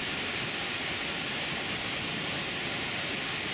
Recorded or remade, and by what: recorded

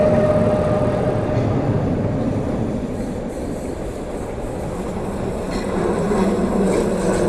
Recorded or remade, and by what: recorded